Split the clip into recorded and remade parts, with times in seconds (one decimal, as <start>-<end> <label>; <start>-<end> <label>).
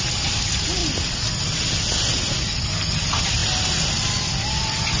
0.0-5.0 recorded